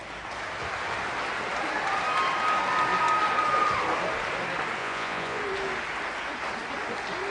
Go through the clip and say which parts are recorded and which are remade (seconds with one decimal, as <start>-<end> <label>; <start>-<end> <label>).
0.0-4.8 recorded; 4.8-5.4 remade; 5.4-7.3 recorded

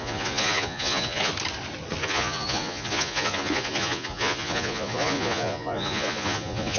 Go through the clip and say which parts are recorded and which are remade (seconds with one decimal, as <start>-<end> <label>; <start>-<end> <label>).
0.0-1.3 remade; 1.3-2.0 recorded; 2.0-6.8 remade